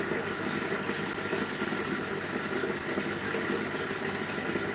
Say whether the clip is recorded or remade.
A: recorded